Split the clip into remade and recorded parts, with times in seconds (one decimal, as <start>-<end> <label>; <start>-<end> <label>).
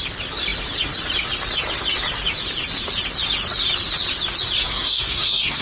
0.0-4.6 recorded; 4.6-5.6 remade